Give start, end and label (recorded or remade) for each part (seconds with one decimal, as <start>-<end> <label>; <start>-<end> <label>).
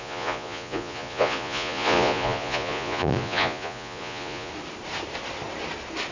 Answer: 0.0-4.5 remade; 4.5-6.1 recorded